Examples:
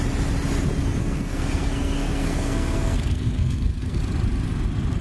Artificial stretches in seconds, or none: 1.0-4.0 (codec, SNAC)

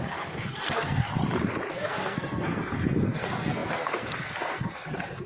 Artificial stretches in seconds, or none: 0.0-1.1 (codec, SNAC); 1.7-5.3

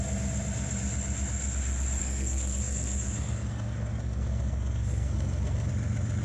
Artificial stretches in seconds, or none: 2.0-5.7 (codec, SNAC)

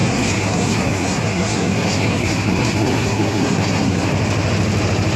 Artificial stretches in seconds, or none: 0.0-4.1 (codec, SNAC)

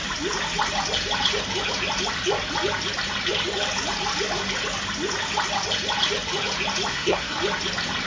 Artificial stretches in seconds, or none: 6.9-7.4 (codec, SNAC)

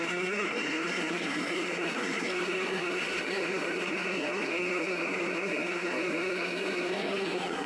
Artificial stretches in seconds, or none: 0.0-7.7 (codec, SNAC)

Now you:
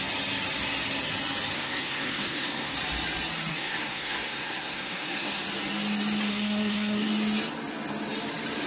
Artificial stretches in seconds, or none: 1.5-2.7 (codec, SNAC); 3.5-5.4; 6.3-7.1

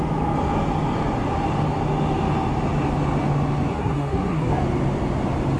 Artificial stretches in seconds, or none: 3.7-4.5 (codec, SNAC)